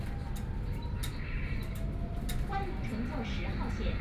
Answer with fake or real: real